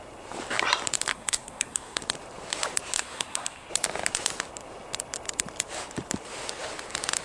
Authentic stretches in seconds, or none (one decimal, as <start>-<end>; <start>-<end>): 0.0-1.1; 2.0-3.0; 3.7-7.2